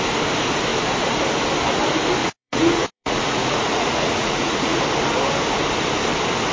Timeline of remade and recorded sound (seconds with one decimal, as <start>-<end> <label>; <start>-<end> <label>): 0.0-2.2 recorded; 2.2-4.8 remade; 4.8-6.5 recorded